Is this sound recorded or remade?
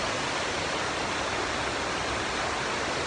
recorded